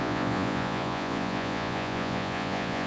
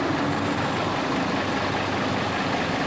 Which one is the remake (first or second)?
first